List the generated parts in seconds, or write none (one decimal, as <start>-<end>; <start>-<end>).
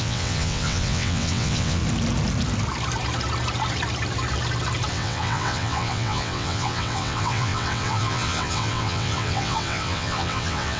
0.0-1.8; 4.9-10.8